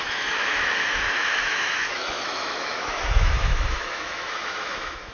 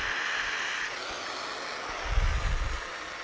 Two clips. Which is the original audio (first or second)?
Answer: second